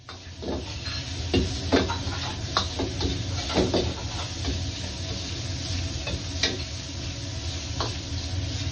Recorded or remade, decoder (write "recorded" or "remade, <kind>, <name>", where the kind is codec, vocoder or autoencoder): recorded